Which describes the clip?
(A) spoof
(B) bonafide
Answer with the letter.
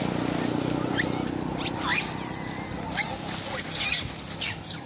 B